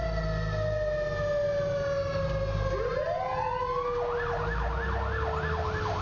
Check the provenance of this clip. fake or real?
real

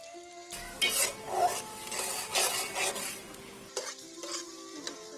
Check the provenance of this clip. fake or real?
real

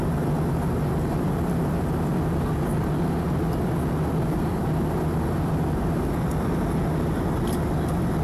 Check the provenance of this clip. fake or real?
real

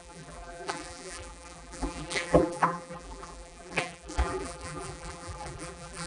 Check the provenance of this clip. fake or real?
fake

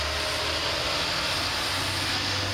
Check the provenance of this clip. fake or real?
real